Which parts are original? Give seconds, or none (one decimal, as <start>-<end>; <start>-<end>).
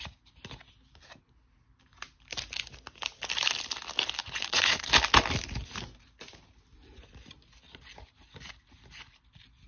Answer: 0.0-4.2; 4.9-9.7